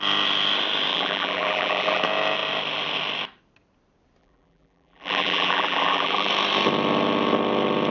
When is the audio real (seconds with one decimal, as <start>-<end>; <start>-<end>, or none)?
0.0-0.9; 2.0-4.2; 6.3-7.9